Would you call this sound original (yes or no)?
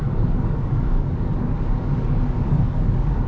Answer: no